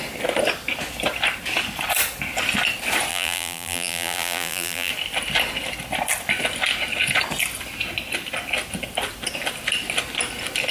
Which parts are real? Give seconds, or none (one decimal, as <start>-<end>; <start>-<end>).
0.0-3.1; 4.9-10.7